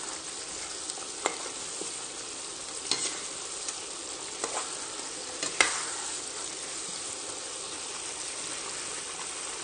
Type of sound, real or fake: real